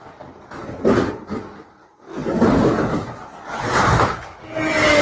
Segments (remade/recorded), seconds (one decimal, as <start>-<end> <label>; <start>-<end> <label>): 0.0-5.0 recorded